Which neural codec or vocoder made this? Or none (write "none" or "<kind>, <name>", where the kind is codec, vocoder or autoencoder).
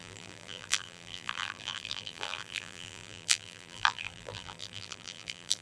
vocoder, BigVGAN v2